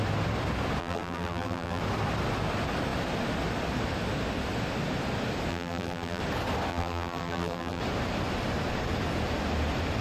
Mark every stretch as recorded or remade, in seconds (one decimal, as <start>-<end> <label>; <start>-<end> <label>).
0.0-0.8 recorded; 0.8-1.8 remade; 1.8-5.5 recorded; 5.5-6.2 remade; 6.2-6.7 recorded; 6.7-7.8 remade; 7.8-10.0 recorded